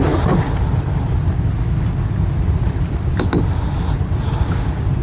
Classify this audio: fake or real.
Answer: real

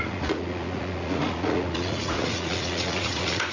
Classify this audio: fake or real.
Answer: fake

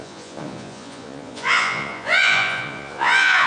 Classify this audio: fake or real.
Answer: fake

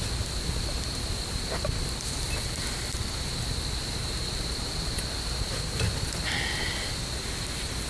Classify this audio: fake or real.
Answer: real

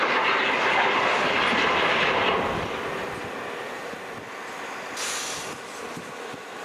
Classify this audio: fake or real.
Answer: real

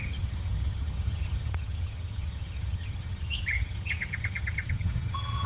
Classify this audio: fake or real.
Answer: fake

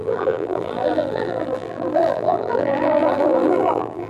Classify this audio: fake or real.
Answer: fake